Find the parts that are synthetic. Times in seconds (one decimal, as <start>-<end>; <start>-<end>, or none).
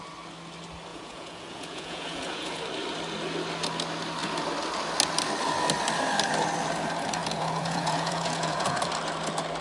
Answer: 0.9-2.6; 7.2-8.8